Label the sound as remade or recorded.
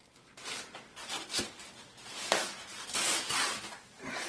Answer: recorded